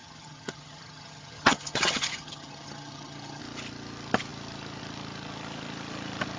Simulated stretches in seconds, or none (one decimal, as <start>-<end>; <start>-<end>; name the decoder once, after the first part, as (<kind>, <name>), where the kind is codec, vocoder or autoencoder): 0.0-3.4 (vocoder, HiFi-GAN)